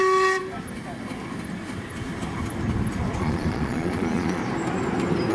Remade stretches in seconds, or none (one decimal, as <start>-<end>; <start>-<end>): 3.2-4.4